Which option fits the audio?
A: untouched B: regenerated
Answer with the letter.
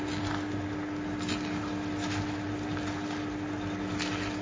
A